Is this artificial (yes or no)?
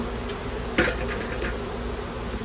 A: no